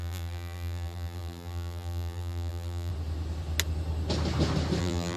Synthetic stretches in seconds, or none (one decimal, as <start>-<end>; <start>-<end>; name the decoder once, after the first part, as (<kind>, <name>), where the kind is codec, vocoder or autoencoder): 0.0-2.9 (vocoder, BigVGAN v2); 4.8-5.2